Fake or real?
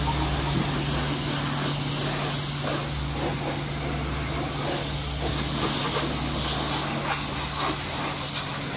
real